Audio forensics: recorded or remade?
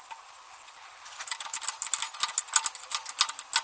recorded